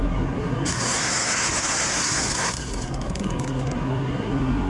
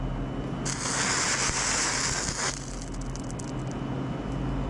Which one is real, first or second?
second